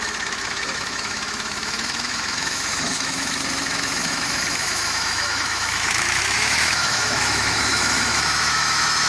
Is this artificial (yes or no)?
yes